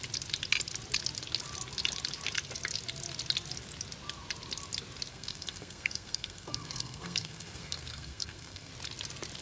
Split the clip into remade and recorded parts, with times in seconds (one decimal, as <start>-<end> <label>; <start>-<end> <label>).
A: 0.0-5.1 recorded; 5.1-8.7 remade; 8.7-9.4 recorded